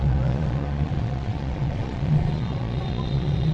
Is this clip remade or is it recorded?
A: remade